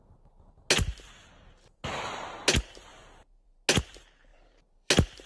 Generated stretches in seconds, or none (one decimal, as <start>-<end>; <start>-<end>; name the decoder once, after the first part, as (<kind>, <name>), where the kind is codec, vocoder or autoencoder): 4.3-5.3 (vocoder, BigVGAN v2)